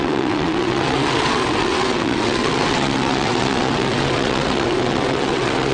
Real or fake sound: fake